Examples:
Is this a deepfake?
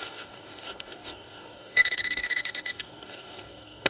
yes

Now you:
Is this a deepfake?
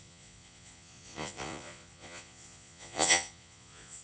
yes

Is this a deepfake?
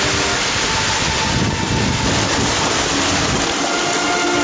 no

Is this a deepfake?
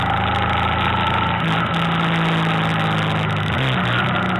no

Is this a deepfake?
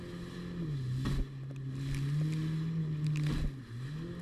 no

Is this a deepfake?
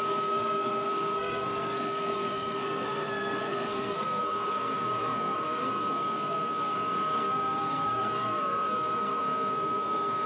yes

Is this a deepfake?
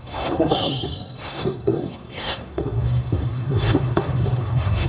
yes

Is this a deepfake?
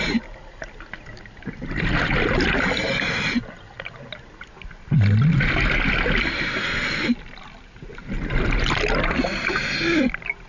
no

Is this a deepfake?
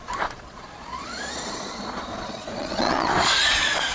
yes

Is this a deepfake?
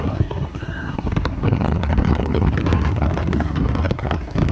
yes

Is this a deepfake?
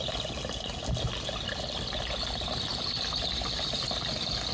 no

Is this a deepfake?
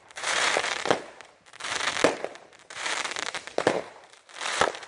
yes